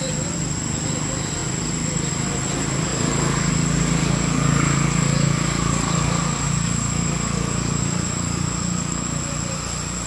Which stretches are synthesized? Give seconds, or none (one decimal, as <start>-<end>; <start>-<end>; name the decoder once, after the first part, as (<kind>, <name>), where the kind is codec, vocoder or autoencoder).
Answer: 2.9-3.5 (codec, DAC); 4.0-9.2